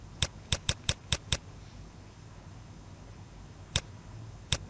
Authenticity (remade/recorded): recorded